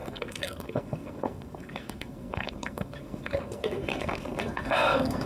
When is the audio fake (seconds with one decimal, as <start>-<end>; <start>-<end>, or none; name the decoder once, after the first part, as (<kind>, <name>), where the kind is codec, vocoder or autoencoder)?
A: 0.0-5.3 (codec, SNAC)